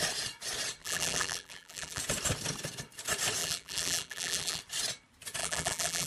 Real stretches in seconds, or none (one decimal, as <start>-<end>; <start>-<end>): 0.0-0.8; 2.0-3.4; 4.6-5.4